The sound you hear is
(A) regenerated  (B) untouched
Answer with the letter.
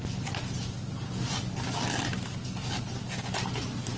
B